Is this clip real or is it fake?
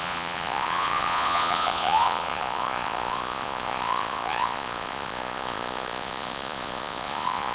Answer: fake